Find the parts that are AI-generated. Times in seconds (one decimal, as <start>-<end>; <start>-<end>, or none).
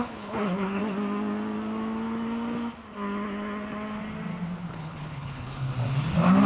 0.0-0.8; 4.7-5.7